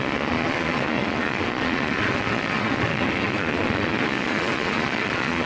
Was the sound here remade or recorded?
remade